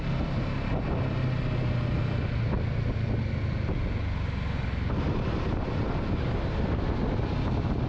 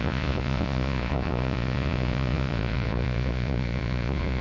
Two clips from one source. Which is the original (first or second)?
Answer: first